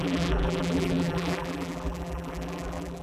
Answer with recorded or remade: remade